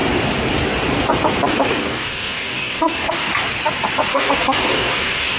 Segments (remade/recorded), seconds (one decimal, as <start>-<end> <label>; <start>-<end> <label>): 0.0-1.8 recorded; 1.8-3.3 remade; 3.3-4.1 recorded; 4.1-5.4 remade